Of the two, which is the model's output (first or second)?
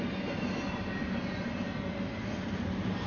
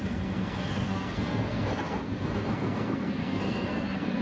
second